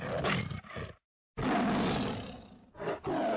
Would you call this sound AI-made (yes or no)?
no